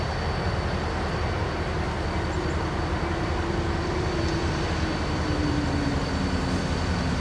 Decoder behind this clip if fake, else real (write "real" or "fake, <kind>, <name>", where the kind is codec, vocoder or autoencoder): real